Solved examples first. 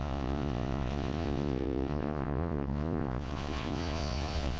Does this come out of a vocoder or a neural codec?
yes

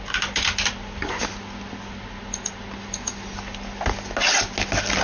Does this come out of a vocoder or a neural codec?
no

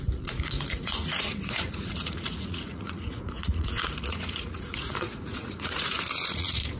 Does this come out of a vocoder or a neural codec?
yes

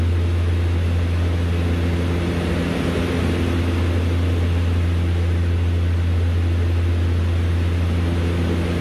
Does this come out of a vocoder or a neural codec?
no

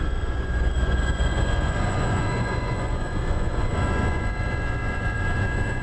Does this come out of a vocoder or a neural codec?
yes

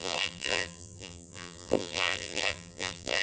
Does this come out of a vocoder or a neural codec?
yes